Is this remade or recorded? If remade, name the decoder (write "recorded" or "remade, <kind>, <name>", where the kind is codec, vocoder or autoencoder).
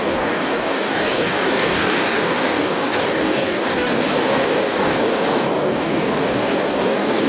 remade, codec, DAC